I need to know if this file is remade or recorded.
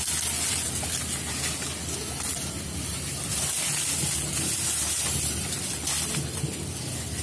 recorded